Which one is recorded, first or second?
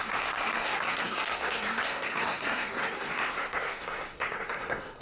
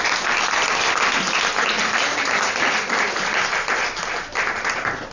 second